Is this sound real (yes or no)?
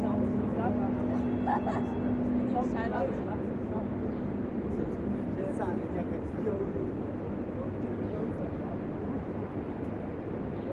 yes